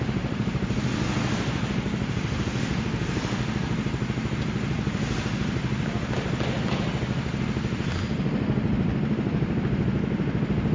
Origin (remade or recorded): recorded